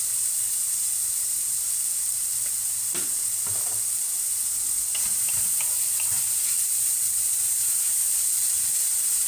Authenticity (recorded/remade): remade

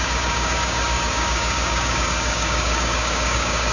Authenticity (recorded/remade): remade